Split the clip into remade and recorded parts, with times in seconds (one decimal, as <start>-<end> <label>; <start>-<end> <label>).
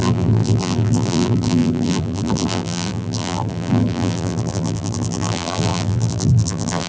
0.0-6.9 remade